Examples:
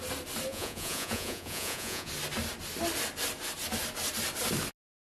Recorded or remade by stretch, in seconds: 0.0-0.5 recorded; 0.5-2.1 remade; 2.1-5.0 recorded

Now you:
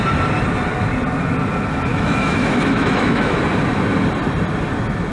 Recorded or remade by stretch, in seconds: 0.0-1.9 recorded; 1.9-3.4 remade; 3.4-5.1 recorded

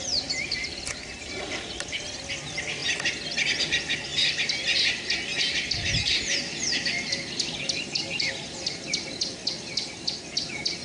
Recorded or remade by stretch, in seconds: 0.0-10.8 recorded

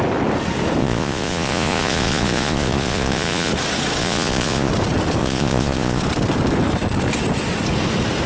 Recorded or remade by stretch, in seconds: 0.0-0.8 recorded; 0.8-3.5 remade; 3.5-4.0 recorded; 4.0-4.7 remade; 4.7-5.2 recorded; 5.2-6.0 remade; 6.0-8.3 recorded

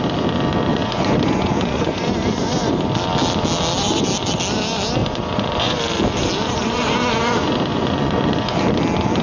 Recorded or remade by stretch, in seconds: 0.0-0.7 recorded; 0.7-2.7 remade; 2.7-5.0 recorded; 5.0-5.8 remade; 5.8-7.7 recorded; 7.7-8.6 remade; 8.6-9.2 recorded

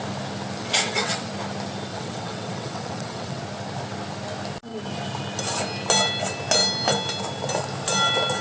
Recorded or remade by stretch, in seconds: 0.0-0.6 recorded; 0.6-1.3 remade; 1.3-1.9 recorded; 1.9-3.4 remade; 3.4-8.4 recorded

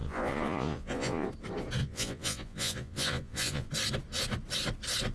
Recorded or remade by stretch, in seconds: 0.0-1.3 remade; 1.3-1.8 recorded; 1.8-3.7 remade; 3.7-5.1 recorded

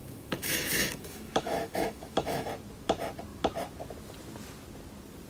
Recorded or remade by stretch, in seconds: 0.0-2.5 remade; 2.5-5.3 recorded